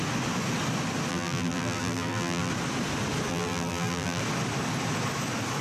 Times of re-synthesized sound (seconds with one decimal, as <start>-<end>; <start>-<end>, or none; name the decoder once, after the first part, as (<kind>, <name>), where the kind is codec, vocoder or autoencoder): 1.1-2.5 (vocoder, BigVGAN v2); 3.3-4.2